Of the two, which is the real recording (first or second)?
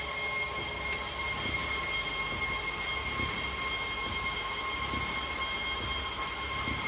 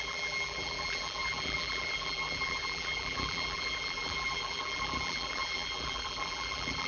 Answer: first